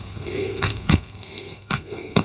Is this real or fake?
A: fake